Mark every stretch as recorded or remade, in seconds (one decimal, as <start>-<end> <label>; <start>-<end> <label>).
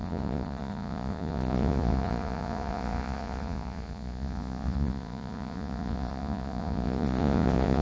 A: 0.0-7.8 remade